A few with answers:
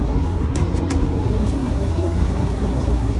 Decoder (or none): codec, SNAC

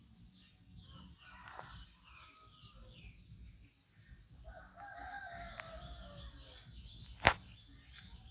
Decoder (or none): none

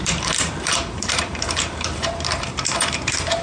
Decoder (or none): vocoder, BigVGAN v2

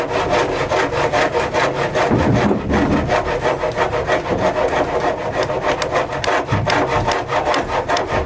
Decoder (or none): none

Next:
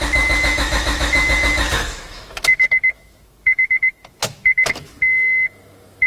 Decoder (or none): autoencoder, DAC-VAE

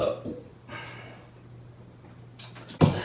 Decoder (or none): none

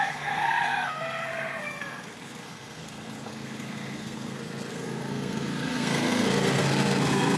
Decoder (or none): codec, SNAC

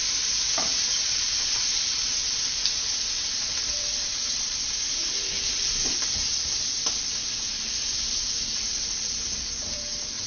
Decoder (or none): vocoder, BigVGAN v2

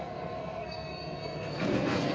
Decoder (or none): codec, SNAC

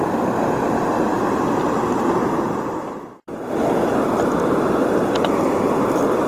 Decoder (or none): none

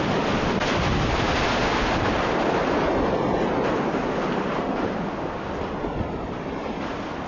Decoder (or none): none